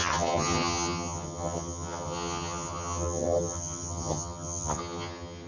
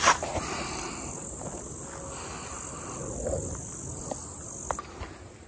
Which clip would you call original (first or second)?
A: second